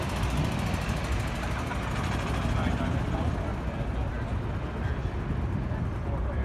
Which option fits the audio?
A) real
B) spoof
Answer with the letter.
A